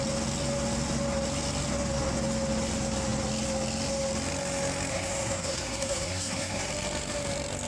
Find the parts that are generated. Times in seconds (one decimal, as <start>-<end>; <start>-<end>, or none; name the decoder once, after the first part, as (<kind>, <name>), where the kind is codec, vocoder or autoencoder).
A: 4.9-6.7 (codec, SNAC)